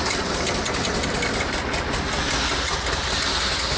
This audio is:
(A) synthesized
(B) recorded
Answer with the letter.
B